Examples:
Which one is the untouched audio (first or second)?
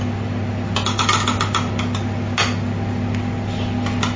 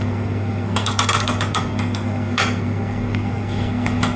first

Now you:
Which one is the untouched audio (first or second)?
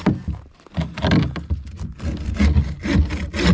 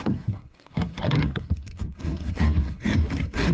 first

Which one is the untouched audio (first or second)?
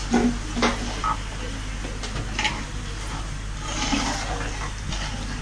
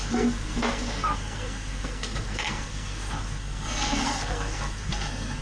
first